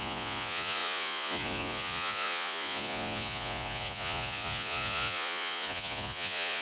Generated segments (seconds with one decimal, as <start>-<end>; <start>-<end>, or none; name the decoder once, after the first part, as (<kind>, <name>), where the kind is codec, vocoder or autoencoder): 0.0-6.6 (vocoder, Vocos)